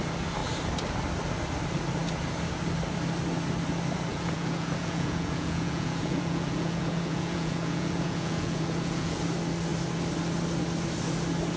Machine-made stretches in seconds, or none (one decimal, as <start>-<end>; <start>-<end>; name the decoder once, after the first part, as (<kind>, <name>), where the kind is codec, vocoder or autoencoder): 4.1-9.2 (vocoder, Vocos)

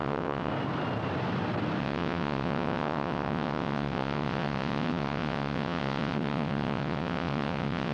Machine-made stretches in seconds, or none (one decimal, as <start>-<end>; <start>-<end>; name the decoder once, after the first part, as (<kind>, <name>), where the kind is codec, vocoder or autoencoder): 0.0-0.5 (vocoder, WaveNeXt); 1.8-7.9

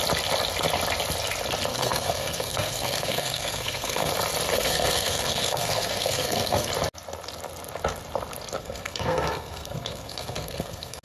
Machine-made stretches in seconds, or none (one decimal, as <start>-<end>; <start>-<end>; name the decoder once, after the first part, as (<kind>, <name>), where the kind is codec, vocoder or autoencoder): 1.7-4.1 (codec, SNAC); 4.5-6.7; 8.6-11.0

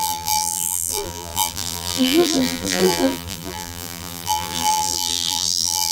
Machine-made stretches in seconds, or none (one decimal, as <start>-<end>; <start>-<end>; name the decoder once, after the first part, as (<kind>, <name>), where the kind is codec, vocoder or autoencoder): 0.0-5.9 (vocoder, BigVGAN v2)

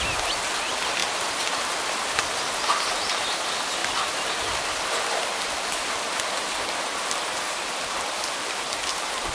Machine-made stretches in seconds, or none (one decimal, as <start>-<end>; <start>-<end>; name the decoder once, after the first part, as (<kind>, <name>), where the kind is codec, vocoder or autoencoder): none

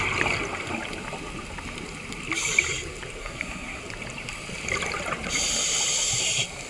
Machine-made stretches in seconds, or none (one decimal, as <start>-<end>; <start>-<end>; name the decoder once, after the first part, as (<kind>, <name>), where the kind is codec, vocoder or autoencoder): 3.2-3.8 (codec, SNAC)

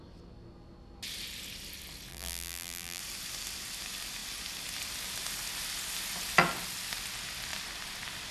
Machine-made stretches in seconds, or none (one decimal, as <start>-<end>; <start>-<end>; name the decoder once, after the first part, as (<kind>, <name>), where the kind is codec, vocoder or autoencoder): 2.1-3.0 (vocoder, BigVGAN v2)

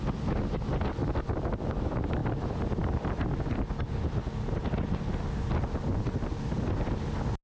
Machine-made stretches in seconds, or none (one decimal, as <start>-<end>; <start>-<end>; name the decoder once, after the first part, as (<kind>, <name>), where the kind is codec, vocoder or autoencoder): none